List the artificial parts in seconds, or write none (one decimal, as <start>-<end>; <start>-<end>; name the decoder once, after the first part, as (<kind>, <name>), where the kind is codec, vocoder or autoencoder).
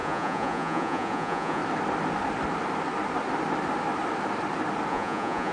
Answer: 0.0-1.6 (vocoder, Vocos); 4.9-5.5